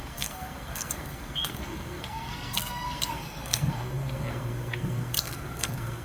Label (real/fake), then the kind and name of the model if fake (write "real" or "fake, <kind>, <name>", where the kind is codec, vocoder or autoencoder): fake, codec, SNAC